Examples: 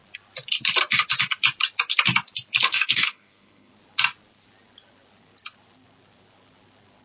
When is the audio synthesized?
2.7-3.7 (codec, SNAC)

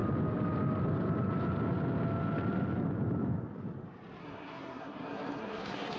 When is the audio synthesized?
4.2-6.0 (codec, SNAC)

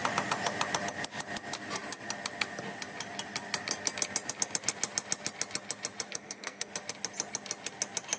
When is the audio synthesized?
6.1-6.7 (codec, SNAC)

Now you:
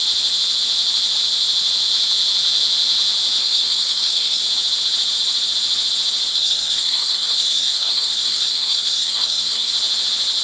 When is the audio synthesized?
3.4-4.4 (codec, SNAC); 6.3-9.7

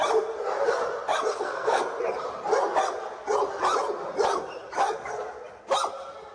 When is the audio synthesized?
1.3-1.8 (codec, SNAC)